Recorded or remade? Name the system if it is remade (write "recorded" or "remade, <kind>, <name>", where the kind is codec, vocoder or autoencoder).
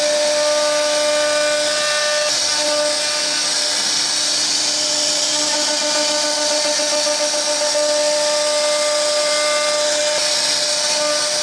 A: recorded